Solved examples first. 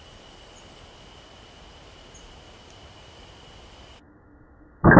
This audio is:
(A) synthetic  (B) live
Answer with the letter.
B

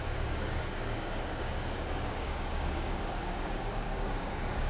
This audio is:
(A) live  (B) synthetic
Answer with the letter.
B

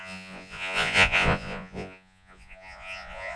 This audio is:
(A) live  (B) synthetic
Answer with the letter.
B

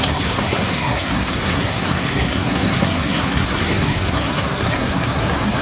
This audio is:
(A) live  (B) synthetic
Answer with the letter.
B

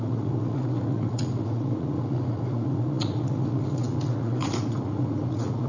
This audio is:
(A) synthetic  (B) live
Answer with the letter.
A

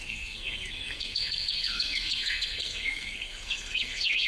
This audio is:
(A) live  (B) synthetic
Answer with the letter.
B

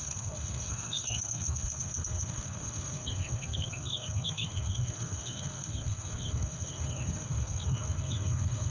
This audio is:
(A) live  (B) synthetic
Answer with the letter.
B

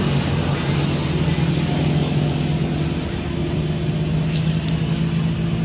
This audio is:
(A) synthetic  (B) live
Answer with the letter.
B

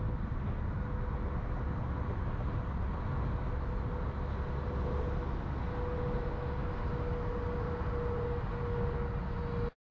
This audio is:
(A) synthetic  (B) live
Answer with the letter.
B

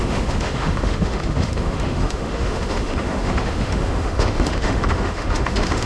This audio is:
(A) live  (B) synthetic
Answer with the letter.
B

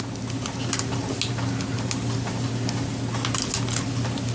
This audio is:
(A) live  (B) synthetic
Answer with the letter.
A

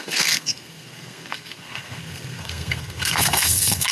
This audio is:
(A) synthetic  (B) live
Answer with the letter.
A